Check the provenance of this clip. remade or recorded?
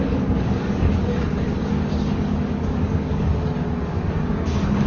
remade